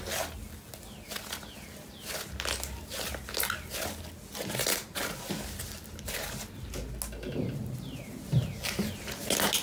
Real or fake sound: real